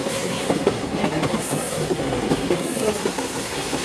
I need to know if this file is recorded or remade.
remade